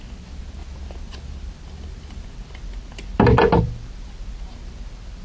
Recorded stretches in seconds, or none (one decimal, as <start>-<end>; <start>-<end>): 0.0-5.2